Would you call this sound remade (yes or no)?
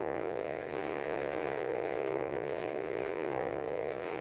yes